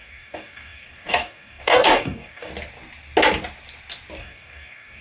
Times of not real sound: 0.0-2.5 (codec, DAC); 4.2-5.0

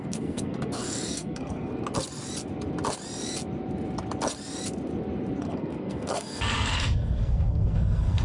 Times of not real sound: 0.0-1.7 (codec, SNAC); 5.4-8.2

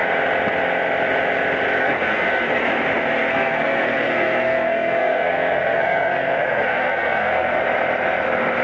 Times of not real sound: 1.8-2.6 (codec, SNAC); 3.3-7.6

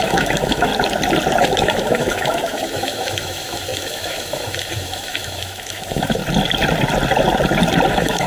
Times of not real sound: 0.0-0.7 (autoencoder, DAC-VAE); 1.4-6.2; 7.9-8.3

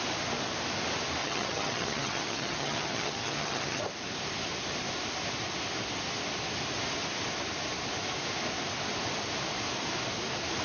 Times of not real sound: 1.2-3.8 (vocoder, HiFi-GAN)

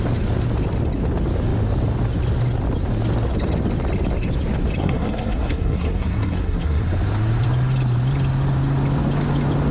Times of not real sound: 4.8-6.8 (codec, SNAC)

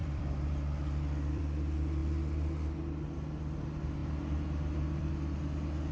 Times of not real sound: 0.0-1.4 (vocoder, BigVGAN v2); 4.0-5.1